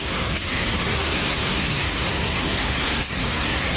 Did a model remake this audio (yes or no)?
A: yes